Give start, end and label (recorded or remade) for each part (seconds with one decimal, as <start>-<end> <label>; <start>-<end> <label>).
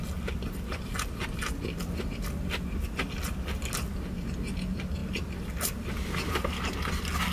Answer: 0.0-7.3 recorded